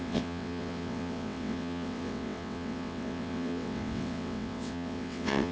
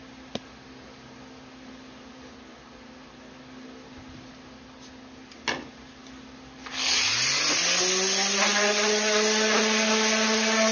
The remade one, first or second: first